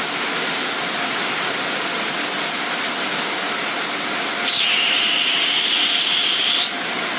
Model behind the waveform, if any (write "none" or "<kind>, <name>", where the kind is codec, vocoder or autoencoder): none